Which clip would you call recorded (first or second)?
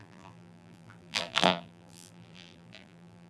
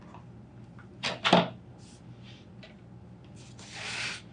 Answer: second